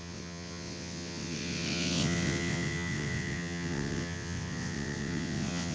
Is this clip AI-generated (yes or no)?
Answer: yes